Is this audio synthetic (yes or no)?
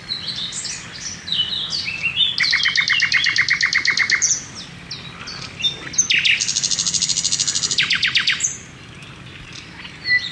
no